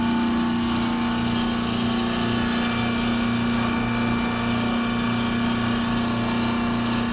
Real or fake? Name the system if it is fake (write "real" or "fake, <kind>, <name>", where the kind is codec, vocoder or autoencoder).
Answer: real